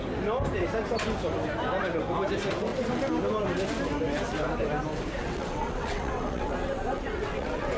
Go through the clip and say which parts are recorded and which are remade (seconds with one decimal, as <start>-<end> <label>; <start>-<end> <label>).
0.0-5.2 recorded; 5.2-7.8 remade